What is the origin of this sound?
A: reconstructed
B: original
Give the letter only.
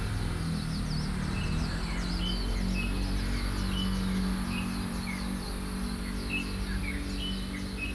B